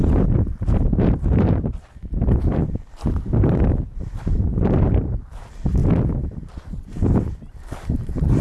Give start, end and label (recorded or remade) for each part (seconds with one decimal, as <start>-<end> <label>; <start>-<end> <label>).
0.0-5.8 remade; 5.8-7.5 recorded; 7.5-8.4 remade